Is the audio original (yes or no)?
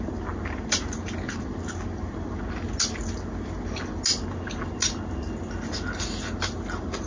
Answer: yes